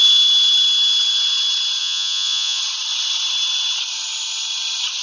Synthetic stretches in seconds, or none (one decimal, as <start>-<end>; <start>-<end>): 1.8-2.6